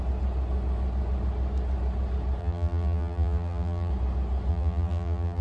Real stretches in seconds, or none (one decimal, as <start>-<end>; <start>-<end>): 0.0-2.4; 3.9-4.5